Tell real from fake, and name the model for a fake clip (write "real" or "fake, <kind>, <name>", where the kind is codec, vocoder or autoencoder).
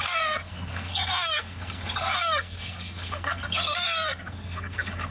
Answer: fake, codec, SNAC